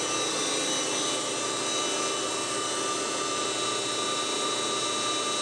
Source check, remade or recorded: recorded